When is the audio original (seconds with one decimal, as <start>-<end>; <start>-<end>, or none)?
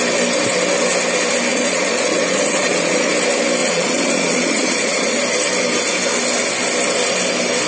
0.0-1.5; 3.1-3.6; 5.2-7.7